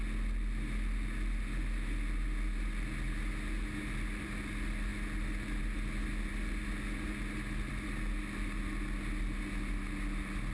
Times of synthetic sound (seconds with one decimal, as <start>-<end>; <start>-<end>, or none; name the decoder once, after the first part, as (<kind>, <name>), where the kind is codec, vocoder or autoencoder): none